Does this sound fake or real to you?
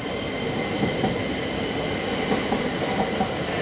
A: real